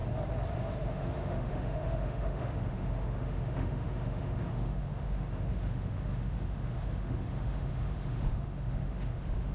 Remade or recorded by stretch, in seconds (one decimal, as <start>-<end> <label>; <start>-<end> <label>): 0.0-0.6 recorded; 0.6-9.5 remade